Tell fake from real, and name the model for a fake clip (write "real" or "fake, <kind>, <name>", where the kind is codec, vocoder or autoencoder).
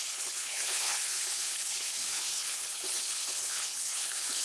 fake, codec, HILCodec